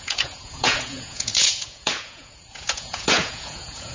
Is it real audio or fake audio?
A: fake